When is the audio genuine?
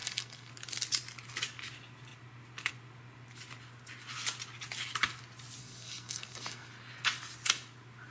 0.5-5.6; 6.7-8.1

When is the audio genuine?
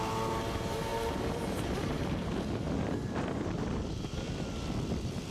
0.0-0.9; 4.0-5.3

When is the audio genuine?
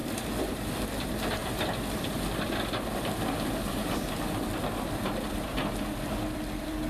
none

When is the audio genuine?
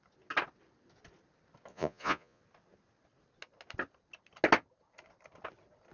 0.0-1.7; 2.4-5.9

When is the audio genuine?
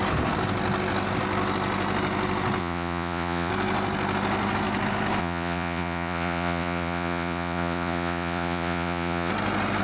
0.0-2.6; 3.5-5.2; 9.3-9.8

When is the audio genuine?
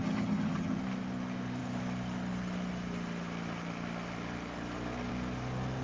0.8-5.8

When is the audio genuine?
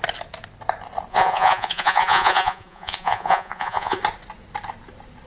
0.0-1.1; 4.0-5.3